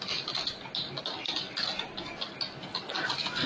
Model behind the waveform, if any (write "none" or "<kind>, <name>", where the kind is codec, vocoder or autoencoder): none